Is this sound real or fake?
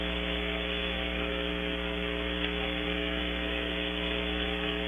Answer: fake